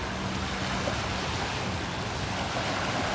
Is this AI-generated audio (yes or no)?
no